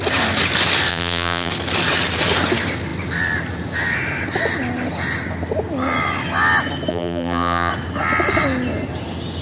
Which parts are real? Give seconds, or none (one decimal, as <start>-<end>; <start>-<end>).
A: 0.0-0.9; 1.5-6.9; 7.7-9.4